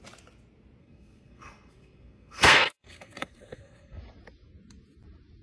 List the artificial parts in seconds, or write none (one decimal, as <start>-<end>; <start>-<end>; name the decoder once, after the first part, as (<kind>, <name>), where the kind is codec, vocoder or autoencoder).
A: 0.8-4.0 (codec, SNAC)